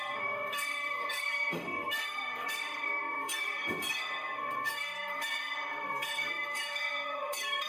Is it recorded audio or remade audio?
remade